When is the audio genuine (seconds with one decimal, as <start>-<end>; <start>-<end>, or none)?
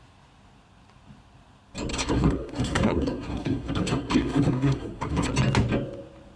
0.0-1.9; 5.3-6.4